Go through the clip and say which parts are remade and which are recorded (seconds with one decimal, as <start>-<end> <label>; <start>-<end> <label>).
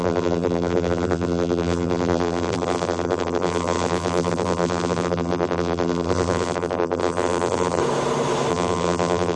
0.0-7.8 remade; 7.8-8.5 recorded; 8.5-9.4 remade